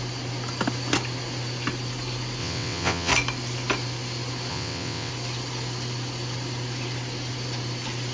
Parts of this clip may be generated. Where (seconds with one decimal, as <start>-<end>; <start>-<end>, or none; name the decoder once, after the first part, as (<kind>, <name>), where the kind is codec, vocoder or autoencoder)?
2.4-3.1 (vocoder, WaveNeXt); 4.5-5.1